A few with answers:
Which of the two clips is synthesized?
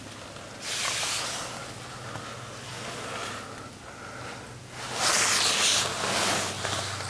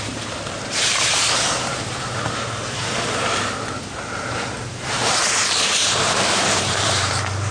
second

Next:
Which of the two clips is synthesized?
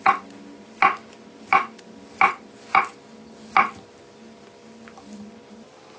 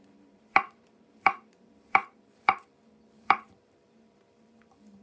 second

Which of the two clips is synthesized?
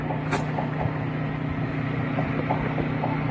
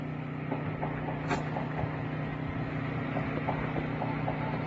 second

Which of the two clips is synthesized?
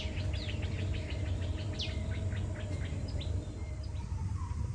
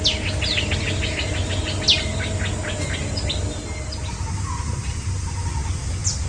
first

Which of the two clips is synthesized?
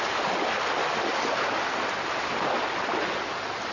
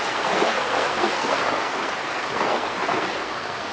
second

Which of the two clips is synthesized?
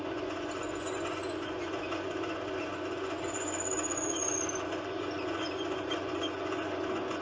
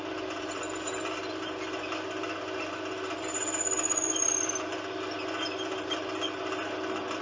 first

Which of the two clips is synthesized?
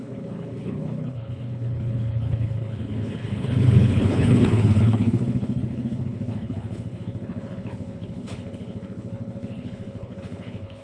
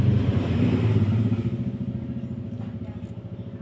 first